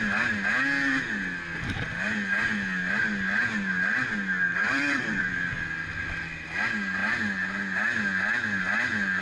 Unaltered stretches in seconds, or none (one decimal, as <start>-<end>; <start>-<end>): 0.0-4.6; 5.5-9.2

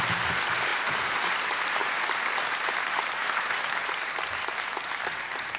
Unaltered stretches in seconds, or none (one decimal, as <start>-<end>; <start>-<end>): 0.0-5.6

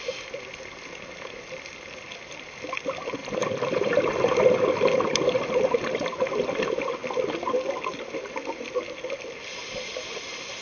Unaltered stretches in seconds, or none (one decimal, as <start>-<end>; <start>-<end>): 0.0-3.2; 5.0-10.6

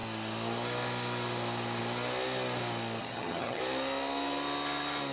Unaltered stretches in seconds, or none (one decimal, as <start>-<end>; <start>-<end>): 0.0-3.0; 3.6-5.1

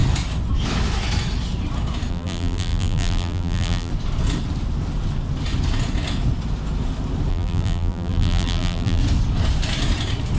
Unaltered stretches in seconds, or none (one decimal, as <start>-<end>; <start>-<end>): 0.0-2.1; 3.9-7.3; 9.0-10.4

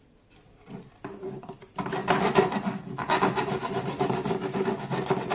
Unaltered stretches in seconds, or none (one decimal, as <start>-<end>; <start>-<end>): 0.0-5.3

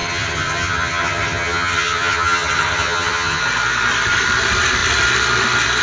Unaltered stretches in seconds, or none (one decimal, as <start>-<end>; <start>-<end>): 3.4-5.8

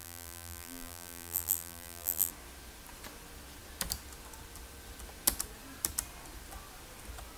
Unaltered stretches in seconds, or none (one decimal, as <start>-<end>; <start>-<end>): 2.3-7.4